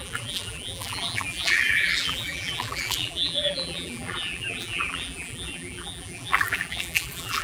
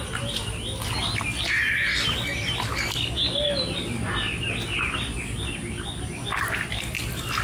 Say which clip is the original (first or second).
second